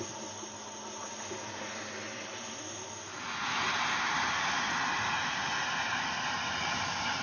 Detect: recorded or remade recorded